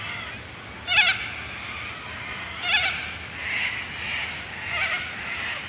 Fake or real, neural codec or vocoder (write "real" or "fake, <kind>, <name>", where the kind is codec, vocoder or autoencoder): real